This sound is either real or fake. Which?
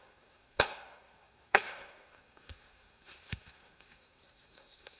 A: fake